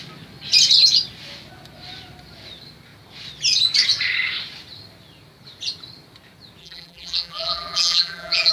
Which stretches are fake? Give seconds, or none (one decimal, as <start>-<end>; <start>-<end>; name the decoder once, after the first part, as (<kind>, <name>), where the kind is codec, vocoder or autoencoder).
6.6-8.5 (vocoder, BigVGAN v2)